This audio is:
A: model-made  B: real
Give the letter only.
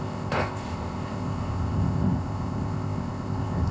A